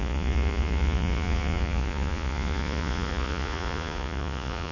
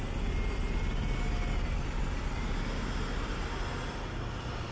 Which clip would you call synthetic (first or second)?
first